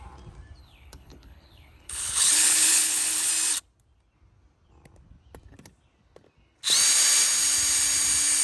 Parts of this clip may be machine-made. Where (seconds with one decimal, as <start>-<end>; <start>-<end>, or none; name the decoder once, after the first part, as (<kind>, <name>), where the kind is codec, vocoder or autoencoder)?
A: 0.6-3.3 (codec, HILCodec)